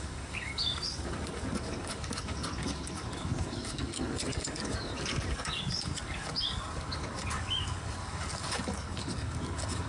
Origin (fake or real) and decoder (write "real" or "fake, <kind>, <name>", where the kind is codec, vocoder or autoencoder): fake, codec, DAC